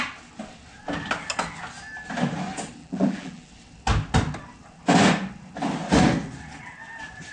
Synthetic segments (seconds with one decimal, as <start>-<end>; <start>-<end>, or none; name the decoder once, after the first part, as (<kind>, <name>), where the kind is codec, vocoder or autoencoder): 2.8-3.5 (vocoder, BigVGAN v2)